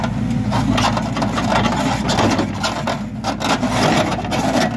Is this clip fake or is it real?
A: real